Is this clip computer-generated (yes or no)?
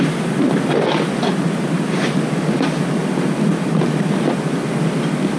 no